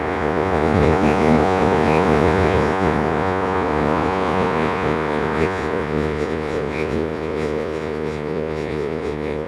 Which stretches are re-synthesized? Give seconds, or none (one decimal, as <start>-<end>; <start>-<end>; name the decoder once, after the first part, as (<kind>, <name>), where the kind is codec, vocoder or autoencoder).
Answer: 0.0-9.5 (vocoder, Vocos)